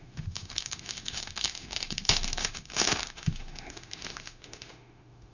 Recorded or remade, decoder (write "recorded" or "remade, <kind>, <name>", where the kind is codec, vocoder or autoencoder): remade, autoencoder, DAC-VAE